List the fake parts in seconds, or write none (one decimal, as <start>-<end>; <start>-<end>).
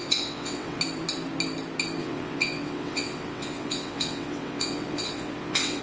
0.0-0.8; 2.0-5.8